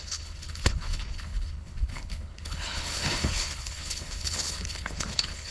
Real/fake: fake